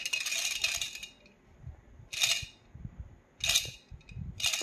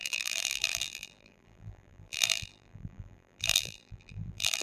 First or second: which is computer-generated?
second